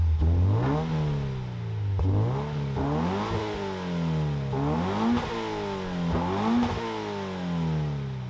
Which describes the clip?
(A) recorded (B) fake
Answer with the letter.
A